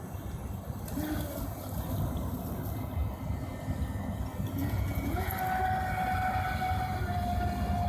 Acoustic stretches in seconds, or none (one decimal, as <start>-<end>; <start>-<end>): 0.0-4.6; 5.3-7.9